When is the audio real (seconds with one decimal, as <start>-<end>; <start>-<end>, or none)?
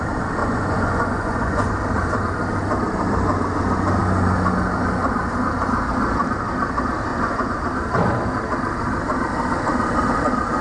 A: 0.0-0.4; 1.7-7.1; 7.6-10.6